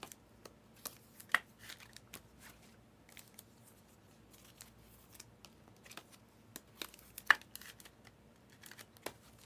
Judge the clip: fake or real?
real